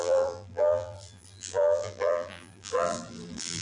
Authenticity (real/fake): fake